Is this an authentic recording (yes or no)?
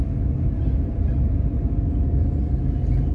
yes